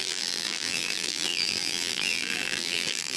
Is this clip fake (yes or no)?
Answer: yes